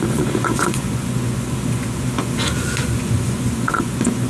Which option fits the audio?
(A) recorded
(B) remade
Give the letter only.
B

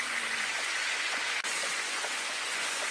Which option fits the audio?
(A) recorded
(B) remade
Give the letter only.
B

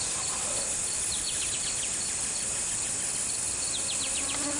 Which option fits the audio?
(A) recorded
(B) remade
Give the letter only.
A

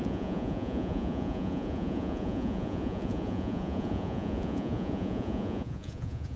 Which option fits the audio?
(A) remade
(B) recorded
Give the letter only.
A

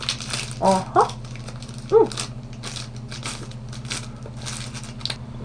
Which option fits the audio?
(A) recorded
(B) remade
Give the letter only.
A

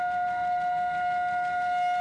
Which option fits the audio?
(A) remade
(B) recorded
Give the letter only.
B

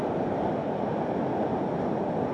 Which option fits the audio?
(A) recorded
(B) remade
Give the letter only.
A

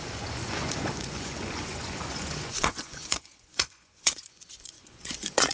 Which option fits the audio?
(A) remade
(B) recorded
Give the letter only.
A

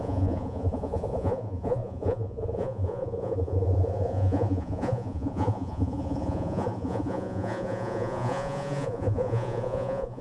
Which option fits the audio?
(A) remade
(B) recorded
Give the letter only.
A